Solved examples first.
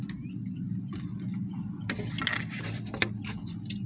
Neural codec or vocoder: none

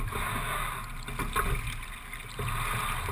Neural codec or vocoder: none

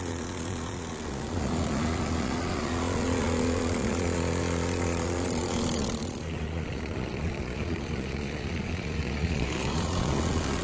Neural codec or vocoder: vocoder, Vocos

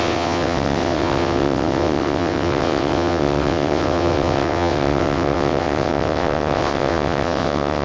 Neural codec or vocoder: vocoder, WaveNeXt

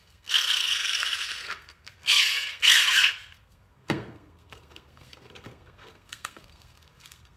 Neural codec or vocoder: codec, SNAC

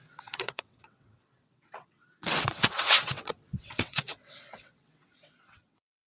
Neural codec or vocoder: vocoder, WaveNeXt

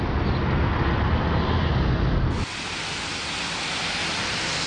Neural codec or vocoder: none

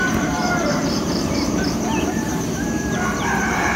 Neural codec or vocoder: vocoder, BigVGAN v2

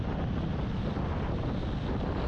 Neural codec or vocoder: none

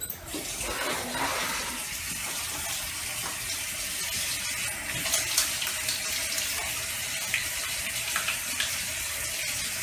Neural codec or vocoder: none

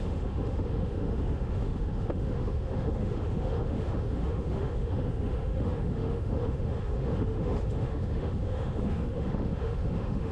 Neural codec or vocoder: autoencoder, DAC-VAE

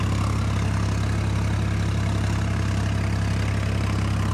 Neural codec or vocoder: none